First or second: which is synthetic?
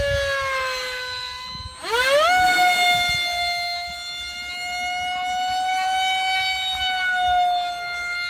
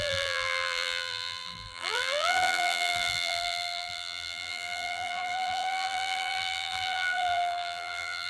second